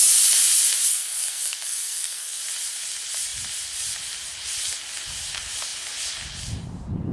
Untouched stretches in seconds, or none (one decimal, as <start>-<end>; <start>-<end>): 0.0-0.9; 2.4-7.1